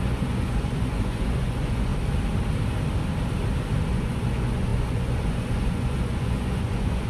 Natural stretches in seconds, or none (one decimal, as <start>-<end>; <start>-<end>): 1.9-3.9